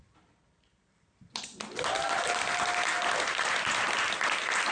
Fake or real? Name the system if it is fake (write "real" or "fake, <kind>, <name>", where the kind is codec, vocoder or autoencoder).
real